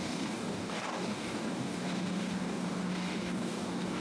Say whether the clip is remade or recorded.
remade